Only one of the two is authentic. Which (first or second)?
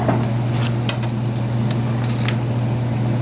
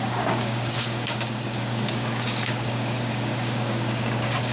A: first